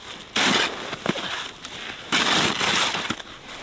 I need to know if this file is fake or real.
real